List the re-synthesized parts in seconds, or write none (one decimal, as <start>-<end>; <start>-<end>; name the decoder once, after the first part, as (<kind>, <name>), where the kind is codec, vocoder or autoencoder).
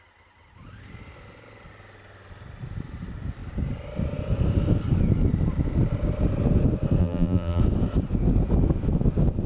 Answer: 7.0-7.6 (vocoder, BigVGAN v2)